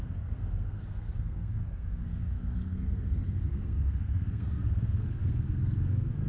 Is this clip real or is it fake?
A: fake